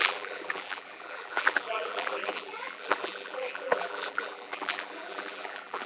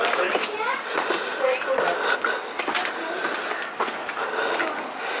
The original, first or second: second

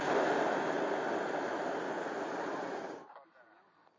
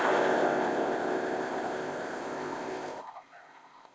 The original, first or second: first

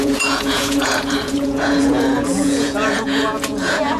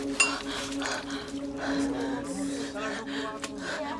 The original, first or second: second